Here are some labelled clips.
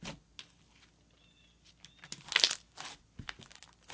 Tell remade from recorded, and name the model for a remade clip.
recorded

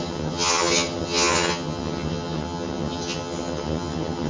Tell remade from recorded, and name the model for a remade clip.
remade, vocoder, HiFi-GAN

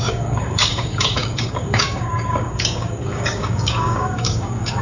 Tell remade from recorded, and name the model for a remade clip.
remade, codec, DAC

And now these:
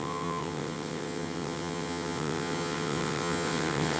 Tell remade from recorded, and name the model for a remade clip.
remade, vocoder, WaveNeXt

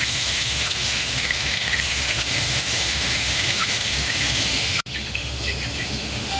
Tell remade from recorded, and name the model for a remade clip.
remade, autoencoder, DAC-VAE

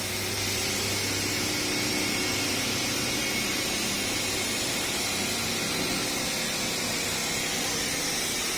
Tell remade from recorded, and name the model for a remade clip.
recorded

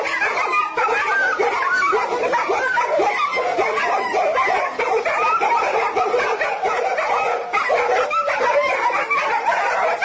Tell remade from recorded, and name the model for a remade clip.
recorded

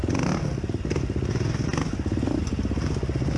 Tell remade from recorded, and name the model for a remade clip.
recorded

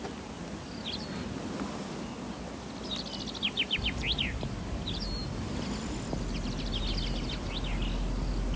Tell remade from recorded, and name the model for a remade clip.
recorded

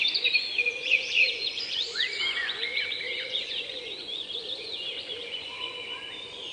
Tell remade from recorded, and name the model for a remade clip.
remade, vocoder, Vocos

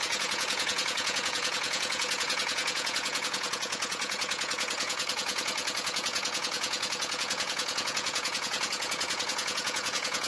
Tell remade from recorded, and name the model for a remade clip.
remade, vocoder, Vocos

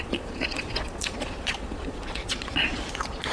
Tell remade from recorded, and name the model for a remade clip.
remade, vocoder, Vocos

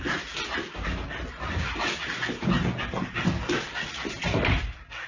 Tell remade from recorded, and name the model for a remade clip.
recorded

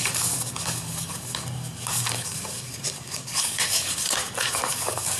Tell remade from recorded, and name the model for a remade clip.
remade, codec, DAC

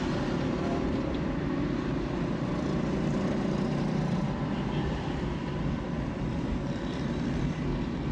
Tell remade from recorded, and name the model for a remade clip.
remade, vocoder, BigVGAN v2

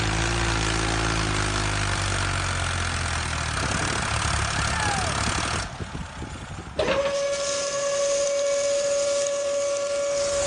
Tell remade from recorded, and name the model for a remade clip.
recorded